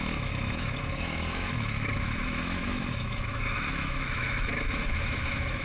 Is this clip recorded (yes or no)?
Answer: no